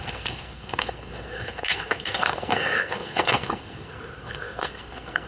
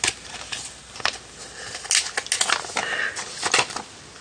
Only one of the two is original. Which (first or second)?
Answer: second